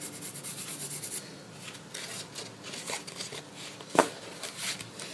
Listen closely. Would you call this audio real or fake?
real